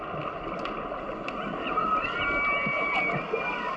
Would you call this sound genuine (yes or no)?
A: yes